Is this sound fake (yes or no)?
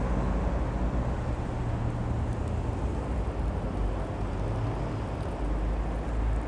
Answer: no